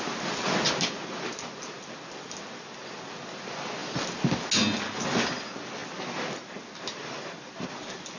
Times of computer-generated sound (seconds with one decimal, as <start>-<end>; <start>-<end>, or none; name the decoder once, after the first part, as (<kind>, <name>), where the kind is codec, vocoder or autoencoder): none